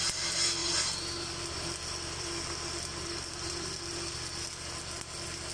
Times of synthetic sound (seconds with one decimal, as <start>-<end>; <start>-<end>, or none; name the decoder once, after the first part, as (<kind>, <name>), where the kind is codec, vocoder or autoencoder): none